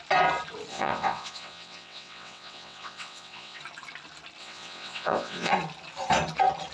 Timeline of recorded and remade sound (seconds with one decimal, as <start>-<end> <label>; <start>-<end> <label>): 0.0-0.7 recorded; 0.7-3.6 remade; 3.6-4.4 recorded; 4.4-5.5 remade; 5.5-6.7 recorded